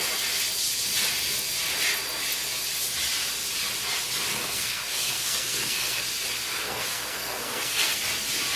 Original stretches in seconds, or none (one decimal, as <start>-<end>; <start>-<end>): 0.0-4.3; 6.0-6.5; 8.0-8.6